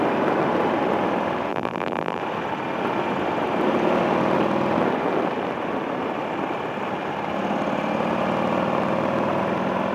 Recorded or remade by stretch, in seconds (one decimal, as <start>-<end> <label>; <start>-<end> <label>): 0.0-1.5 recorded; 1.5-2.2 remade; 2.2-9.9 recorded